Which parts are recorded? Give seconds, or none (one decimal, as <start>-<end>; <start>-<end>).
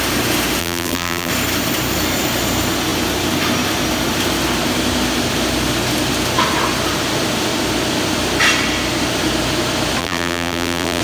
0.0-0.6; 1.3-10.0